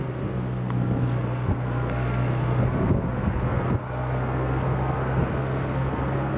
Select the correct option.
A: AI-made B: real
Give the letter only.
A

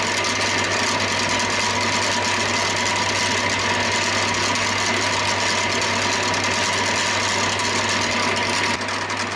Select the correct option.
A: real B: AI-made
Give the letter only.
A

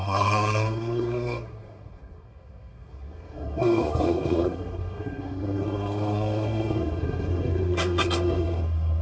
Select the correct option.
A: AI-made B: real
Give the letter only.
A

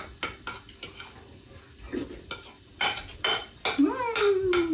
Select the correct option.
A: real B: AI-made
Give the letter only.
A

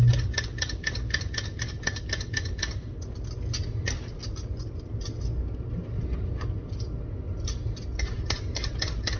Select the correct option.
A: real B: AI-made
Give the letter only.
A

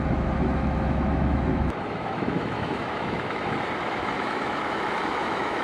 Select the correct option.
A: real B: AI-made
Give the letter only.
B